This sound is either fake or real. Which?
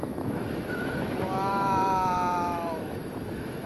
fake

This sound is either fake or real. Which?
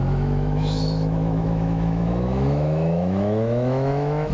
fake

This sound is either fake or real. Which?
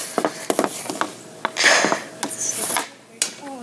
real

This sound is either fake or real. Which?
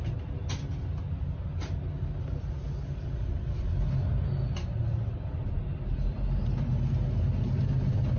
real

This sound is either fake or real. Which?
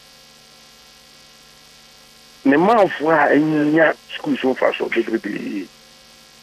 real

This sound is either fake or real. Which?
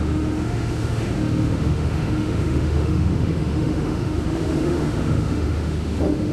fake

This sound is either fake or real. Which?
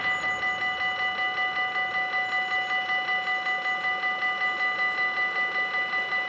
real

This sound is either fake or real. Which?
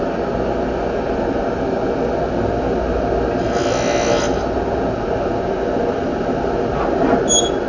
real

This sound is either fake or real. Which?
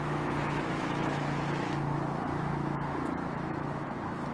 fake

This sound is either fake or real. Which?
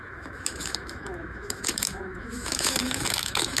fake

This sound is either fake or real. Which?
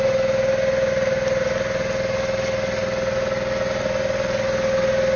real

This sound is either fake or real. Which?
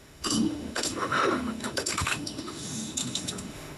fake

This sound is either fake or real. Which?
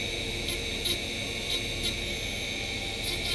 real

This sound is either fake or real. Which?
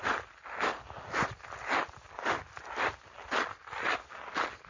real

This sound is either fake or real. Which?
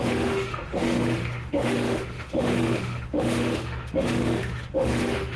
fake